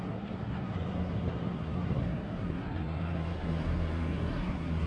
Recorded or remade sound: remade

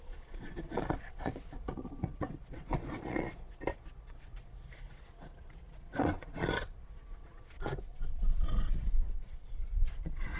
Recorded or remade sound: remade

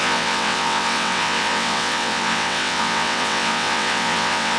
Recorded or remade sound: remade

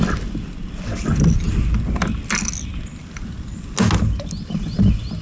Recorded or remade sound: recorded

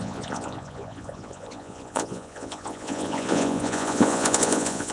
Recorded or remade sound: remade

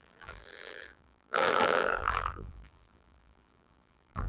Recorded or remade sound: remade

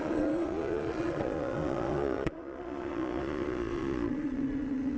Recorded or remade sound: remade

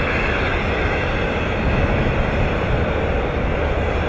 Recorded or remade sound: recorded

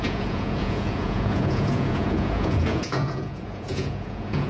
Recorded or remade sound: remade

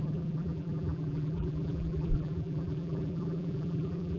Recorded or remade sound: remade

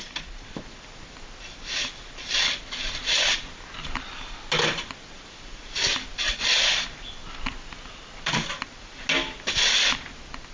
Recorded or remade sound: recorded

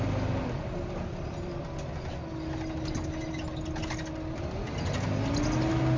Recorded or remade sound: recorded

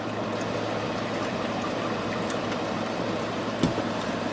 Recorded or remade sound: remade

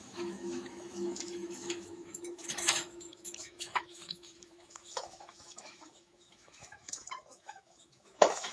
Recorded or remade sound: remade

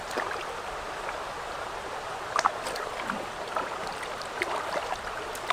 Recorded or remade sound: recorded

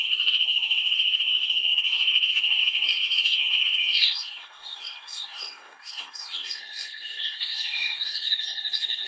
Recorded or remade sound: remade